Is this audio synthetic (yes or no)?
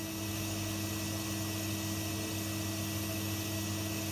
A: no